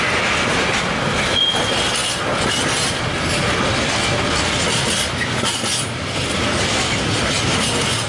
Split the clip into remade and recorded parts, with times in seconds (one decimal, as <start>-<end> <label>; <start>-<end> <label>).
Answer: 0.0-8.1 recorded